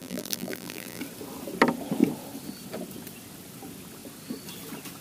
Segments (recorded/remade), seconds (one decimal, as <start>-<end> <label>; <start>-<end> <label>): 0.0-1.0 remade; 1.0-5.0 recorded